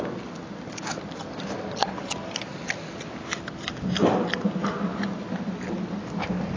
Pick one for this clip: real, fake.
real